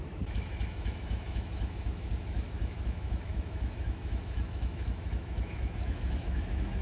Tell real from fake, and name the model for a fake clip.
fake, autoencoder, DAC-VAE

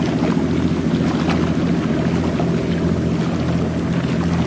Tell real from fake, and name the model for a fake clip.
real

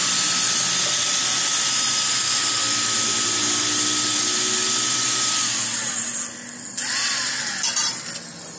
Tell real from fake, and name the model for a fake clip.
real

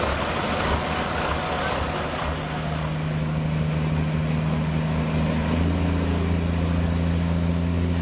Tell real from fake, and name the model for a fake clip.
real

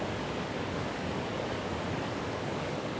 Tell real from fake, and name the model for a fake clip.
fake, codec, DAC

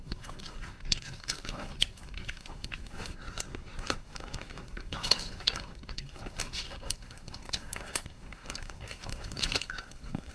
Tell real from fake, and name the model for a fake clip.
fake, codec, SNAC